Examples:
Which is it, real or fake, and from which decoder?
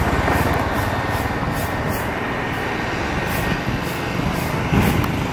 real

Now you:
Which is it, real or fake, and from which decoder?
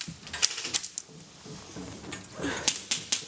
real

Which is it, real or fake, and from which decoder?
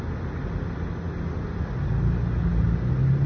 real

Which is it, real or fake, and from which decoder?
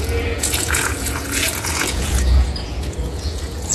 fake, vocoder, Vocos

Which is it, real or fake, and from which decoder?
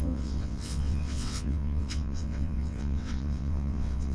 fake, vocoder, WaveNeXt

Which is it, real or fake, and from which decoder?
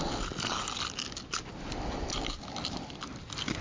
real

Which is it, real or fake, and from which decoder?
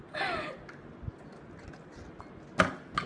real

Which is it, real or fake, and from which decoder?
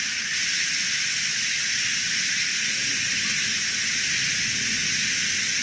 real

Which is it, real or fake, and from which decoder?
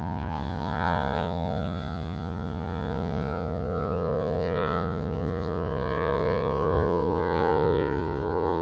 fake, vocoder, Vocos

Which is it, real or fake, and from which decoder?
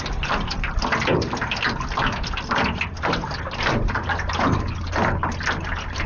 real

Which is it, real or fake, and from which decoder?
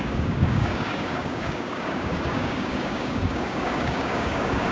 fake, codec, DAC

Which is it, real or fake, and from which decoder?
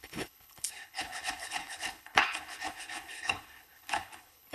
fake, codec, HILCodec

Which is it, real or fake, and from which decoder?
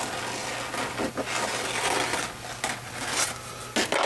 real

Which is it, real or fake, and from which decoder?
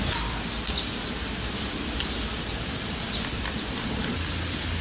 real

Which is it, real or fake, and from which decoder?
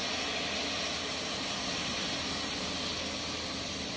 real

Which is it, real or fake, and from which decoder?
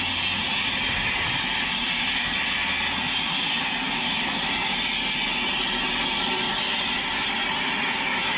real